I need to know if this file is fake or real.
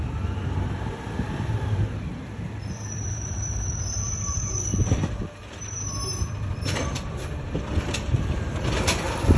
fake